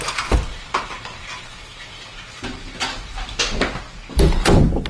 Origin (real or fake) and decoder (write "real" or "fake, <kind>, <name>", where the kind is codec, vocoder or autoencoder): real